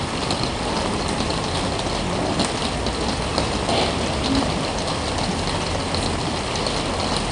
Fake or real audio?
real